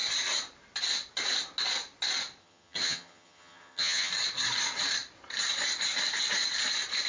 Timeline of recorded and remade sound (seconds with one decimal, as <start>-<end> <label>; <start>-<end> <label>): 0.0-2.4 recorded; 2.4-4.1 remade; 4.1-7.1 recorded